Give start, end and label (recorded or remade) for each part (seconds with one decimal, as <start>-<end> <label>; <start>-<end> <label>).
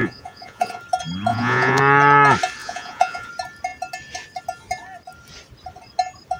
0.0-0.8 remade; 0.8-1.3 recorded; 1.3-1.8 remade; 1.8-2.6 recorded; 2.6-3.3 remade; 3.3-6.4 recorded